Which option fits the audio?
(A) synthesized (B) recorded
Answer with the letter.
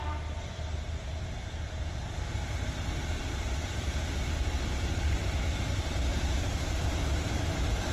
A